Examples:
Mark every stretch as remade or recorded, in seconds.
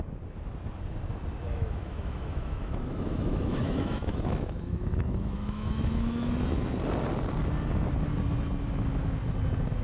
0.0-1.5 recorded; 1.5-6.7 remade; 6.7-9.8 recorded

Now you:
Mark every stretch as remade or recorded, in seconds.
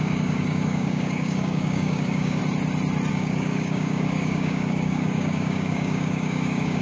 0.0-2.4 remade; 2.4-3.1 recorded; 3.1-6.8 remade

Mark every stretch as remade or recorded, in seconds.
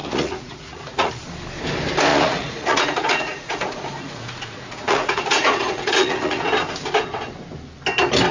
0.0-1.1 remade; 1.1-2.1 recorded; 2.1-6.4 remade; 6.4-8.3 recorded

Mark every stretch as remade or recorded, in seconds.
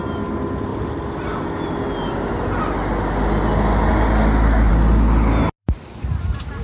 0.0-6.6 recorded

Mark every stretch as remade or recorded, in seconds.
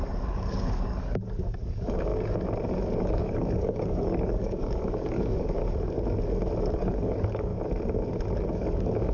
0.0-2.1 remade; 2.1-3.0 recorded; 3.0-5.6 remade; 5.6-6.8 recorded; 6.8-7.5 remade; 7.5-8.5 recorded; 8.5-9.1 remade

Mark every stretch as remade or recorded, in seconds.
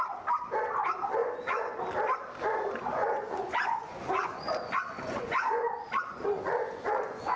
0.0-1.2 recorded; 1.2-1.8 remade; 1.8-3.0 recorded; 3.0-7.4 remade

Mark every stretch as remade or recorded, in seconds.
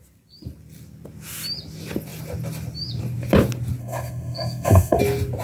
0.0-3.8 recorded; 3.8-5.0 remade; 5.0-5.4 recorded